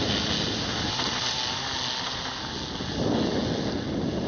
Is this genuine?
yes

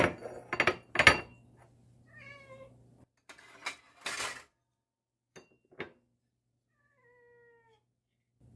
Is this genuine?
yes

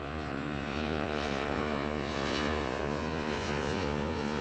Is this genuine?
no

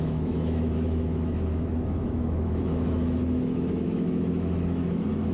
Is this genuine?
no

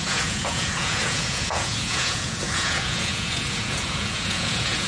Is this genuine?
no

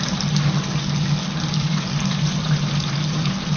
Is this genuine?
yes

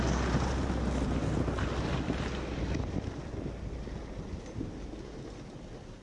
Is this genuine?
yes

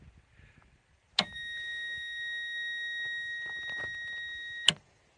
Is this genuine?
yes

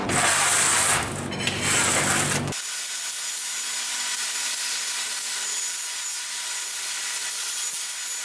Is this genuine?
yes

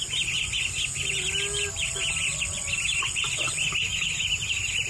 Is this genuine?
yes